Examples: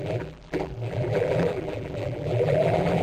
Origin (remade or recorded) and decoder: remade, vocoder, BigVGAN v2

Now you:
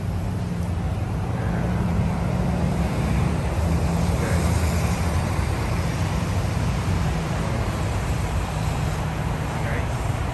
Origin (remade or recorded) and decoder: remade, vocoder, BigVGAN v2